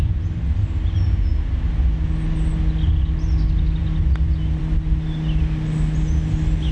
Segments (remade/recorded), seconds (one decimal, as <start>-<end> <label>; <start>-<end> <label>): 0.0-6.7 recorded